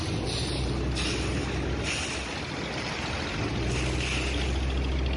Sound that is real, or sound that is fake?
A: real